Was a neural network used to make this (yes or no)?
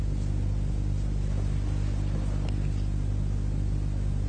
no